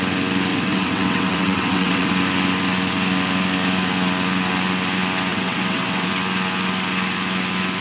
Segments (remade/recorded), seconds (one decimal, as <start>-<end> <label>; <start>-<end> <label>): 0.0-0.5 recorded; 0.5-2.1 remade; 2.1-5.3 recorded; 5.3-6.1 remade; 6.1-7.8 recorded